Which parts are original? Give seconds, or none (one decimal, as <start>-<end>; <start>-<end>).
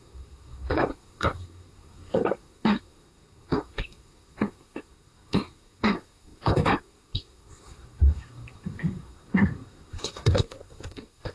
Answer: none